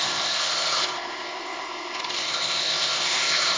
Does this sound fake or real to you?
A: fake